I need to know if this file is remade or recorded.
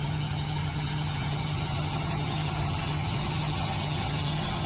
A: remade